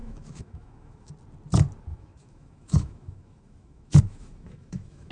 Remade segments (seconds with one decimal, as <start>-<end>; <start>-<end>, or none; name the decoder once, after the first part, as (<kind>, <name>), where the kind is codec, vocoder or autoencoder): 0.0-1.1 (autoencoder, DAC-VAE); 1.9-5.1